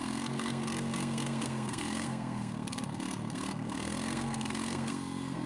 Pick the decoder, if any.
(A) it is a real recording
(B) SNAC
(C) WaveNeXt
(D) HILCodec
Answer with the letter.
B